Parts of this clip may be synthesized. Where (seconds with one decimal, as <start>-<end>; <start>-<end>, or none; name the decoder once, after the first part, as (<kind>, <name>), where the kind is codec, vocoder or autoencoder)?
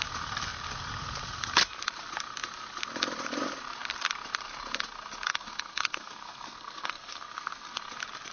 5.3-7.8 (codec, SNAC)